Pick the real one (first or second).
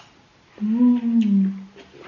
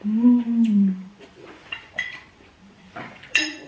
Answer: first